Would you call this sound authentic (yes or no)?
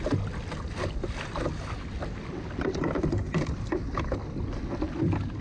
yes